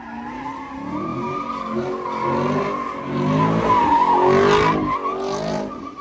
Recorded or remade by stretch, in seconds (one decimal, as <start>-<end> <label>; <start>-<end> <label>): 0.0-5.1 recorded; 5.1-6.0 remade

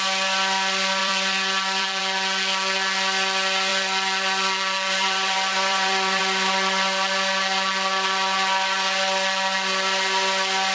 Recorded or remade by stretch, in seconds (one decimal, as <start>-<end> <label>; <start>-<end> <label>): 0.0-1.0 recorded; 1.0-2.0 remade; 2.0-3.7 recorded; 3.7-6.2 remade; 6.2-10.7 recorded

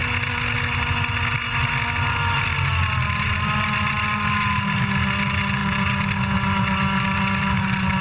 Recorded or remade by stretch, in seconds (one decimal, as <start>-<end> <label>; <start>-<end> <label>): 0.0-8.0 recorded

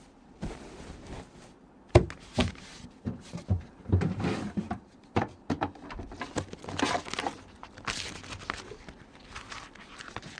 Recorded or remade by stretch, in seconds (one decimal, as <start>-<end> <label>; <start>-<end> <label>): 0.0-2.4 recorded; 2.4-5.2 remade; 5.2-10.4 recorded

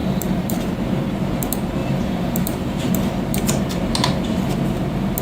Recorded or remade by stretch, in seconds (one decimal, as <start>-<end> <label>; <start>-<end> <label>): 0.0-0.6 remade; 0.6-1.8 recorded; 1.8-2.9 remade; 2.9-5.2 recorded

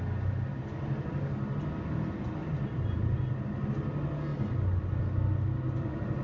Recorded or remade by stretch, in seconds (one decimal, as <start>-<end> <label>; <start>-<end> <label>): 0.0-0.5 recorded; 0.5-1.1 remade; 1.1-2.4 recorded; 2.4-3.3 remade; 3.3-6.2 recorded

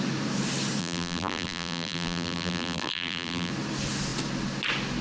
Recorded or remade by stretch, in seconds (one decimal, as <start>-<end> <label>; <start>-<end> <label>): 0.0-0.8 recorded; 0.8-3.5 remade; 3.5-5.0 recorded

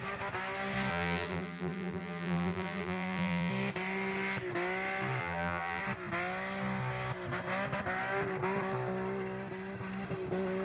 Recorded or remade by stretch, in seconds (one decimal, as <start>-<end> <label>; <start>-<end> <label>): 0.0-0.9 recorded; 0.9-3.5 remade; 3.5-5.2 recorded; 5.2-5.8 remade; 5.8-10.6 recorded